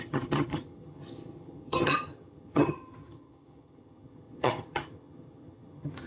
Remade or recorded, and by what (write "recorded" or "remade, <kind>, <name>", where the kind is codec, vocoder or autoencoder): remade, vocoder, HiFi-GAN